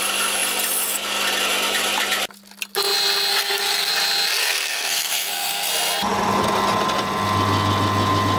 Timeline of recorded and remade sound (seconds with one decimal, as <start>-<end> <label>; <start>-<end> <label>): 0.0-3.3 recorded; 3.3-3.9 remade; 3.9-4.4 recorded; 4.4-5.7 remade; 5.7-8.4 recorded